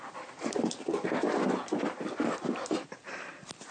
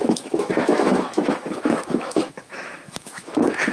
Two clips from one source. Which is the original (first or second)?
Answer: first